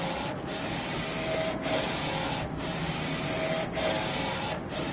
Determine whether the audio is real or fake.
real